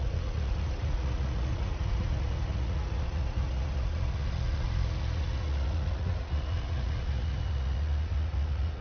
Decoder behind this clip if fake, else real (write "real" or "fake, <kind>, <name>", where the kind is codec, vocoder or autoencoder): fake, vocoder, Vocos